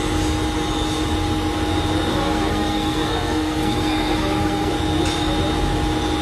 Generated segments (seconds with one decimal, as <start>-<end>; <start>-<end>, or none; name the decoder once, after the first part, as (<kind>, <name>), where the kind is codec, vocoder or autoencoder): 2.1-4.7 (codec, SNAC)